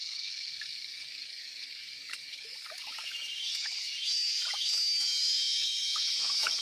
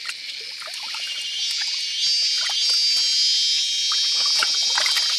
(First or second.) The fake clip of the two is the first